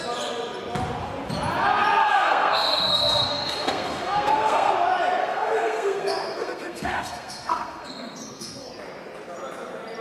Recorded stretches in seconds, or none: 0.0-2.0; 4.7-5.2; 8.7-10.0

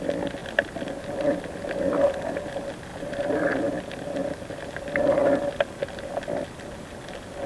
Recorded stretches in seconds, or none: 0.0-7.5

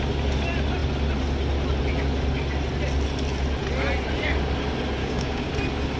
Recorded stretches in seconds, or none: 0.0-5.0; 5.5-6.0

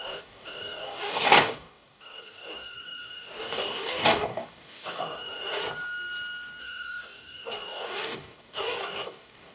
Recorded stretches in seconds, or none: 5.6-6.6

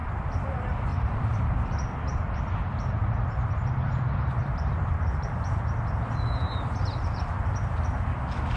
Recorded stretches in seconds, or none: 0.5-0.9; 1.4-3.0; 6.0-8.6

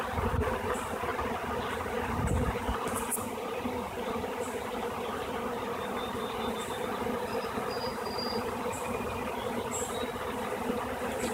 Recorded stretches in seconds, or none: 1.1-5.8

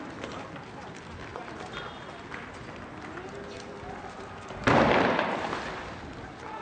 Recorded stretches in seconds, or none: 0.0-6.6